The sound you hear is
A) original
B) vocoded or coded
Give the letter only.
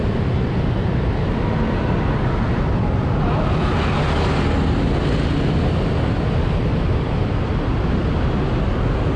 A